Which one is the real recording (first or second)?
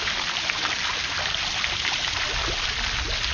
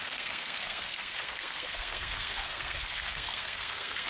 first